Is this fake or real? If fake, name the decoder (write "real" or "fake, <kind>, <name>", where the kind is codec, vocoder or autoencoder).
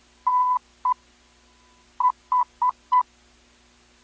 real